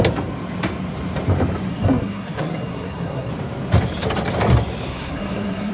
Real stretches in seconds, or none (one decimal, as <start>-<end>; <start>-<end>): 0.0-1.7; 3.3-4.9